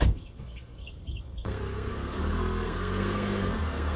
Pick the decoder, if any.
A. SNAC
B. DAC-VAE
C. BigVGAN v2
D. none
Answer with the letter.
A